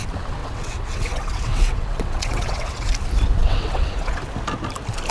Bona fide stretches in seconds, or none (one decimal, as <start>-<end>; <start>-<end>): 0.0-0.4; 2.9-3.4; 4.2-5.1